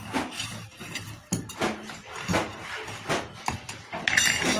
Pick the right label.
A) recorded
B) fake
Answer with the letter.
A